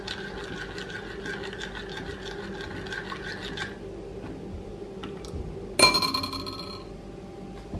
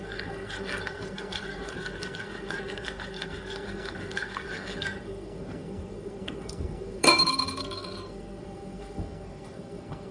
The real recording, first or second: first